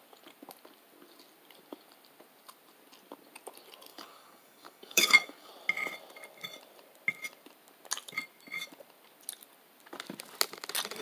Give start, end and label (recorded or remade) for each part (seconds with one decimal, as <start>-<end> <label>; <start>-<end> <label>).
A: 0.0-3.9 recorded; 3.9-5.5 remade; 5.5-11.0 recorded